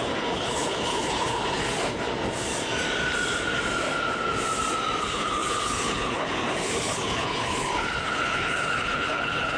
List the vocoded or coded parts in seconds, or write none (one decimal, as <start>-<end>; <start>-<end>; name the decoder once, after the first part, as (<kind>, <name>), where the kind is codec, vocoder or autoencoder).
0.0-2.1 (codec, HILCodec); 5.0-9.6